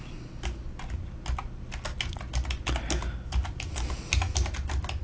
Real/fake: real